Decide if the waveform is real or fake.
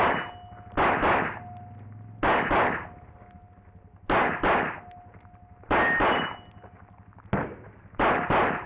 real